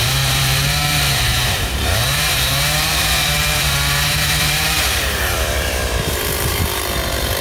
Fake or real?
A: fake